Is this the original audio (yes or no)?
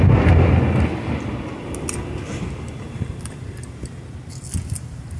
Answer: yes